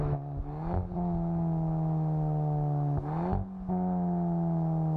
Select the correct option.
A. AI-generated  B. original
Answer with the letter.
B